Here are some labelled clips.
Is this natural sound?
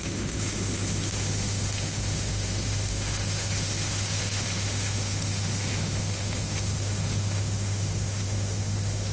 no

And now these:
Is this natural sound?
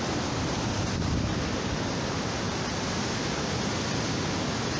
yes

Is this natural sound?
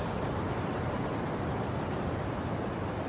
yes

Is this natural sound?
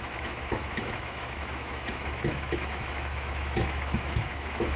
no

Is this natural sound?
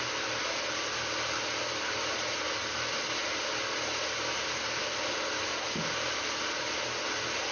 yes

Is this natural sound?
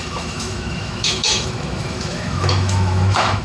no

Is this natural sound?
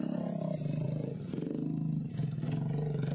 yes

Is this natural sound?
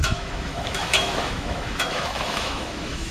no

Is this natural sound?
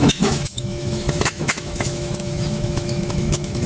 no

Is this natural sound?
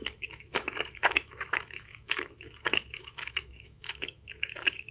no